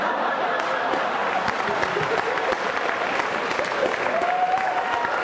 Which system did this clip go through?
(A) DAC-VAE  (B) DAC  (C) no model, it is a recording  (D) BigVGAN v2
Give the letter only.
C